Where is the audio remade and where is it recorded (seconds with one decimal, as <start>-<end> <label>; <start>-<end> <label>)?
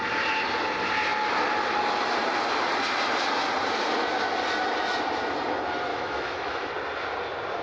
0.0-5.9 recorded; 5.9-6.7 remade; 6.7-7.6 recorded